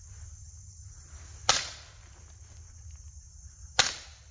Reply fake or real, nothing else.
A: real